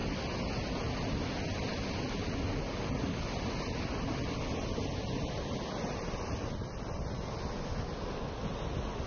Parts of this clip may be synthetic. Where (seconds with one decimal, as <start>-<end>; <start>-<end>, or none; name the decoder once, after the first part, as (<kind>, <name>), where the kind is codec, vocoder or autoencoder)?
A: none